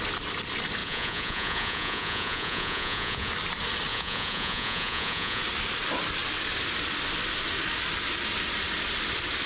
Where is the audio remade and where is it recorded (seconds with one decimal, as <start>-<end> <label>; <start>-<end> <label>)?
0.0-0.8 recorded; 0.8-3.3 remade; 3.3-3.9 recorded; 3.9-5.4 remade; 5.4-9.5 recorded